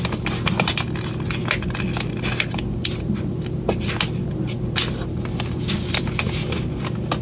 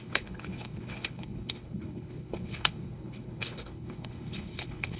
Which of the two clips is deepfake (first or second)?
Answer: second